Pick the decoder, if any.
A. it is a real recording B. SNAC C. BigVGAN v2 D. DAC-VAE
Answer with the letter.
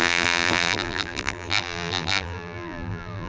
C